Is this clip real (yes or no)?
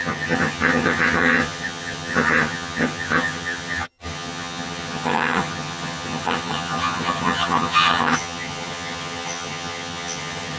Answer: no